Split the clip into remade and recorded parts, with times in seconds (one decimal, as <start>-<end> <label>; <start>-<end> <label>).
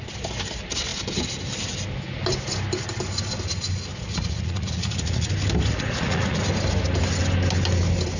0.0-3.9 recorded; 3.9-5.3 remade; 5.3-5.7 recorded; 5.7-6.4 remade; 6.4-8.2 recorded